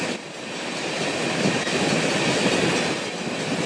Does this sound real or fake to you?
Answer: real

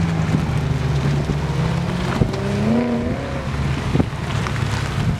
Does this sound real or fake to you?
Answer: real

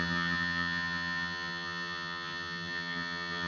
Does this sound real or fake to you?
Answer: fake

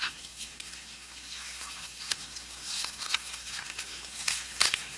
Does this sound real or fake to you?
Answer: fake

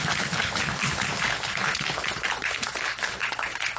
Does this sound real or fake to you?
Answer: fake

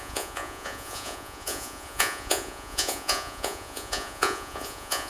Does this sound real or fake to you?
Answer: fake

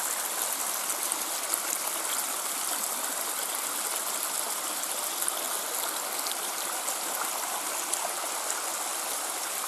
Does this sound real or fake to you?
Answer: real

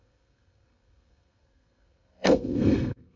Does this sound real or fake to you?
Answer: fake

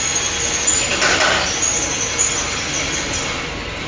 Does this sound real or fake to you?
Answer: real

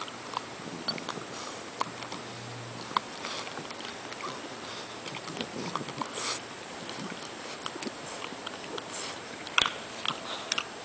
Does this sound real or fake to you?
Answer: real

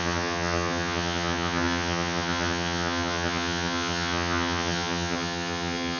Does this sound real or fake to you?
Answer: fake